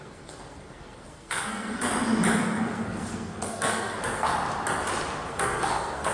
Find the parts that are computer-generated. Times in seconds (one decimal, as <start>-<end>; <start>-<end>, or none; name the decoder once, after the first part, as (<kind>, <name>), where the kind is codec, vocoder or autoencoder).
0.0-1.9 (codec, SNAC); 2.4-4.3; 5.3-6.1